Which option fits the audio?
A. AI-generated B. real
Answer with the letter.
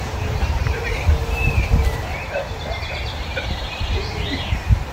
A